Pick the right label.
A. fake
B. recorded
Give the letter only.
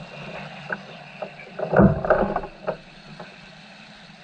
B